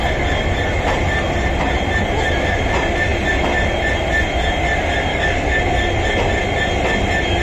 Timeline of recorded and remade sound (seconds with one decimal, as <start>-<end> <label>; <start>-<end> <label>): 0.0-5.1 recorded; 5.1-5.6 remade; 5.6-7.4 recorded